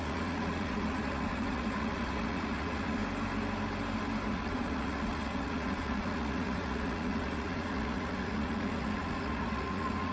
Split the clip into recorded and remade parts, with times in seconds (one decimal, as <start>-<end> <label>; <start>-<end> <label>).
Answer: 0.0-3.0 remade; 3.0-4.3 recorded; 4.3-10.1 remade